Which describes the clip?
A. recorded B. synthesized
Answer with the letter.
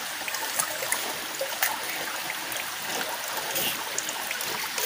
A